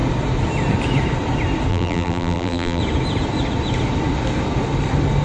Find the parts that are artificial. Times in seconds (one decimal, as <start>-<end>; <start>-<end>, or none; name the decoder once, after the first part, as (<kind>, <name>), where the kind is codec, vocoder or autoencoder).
1.7-2.8 (vocoder, BigVGAN v2)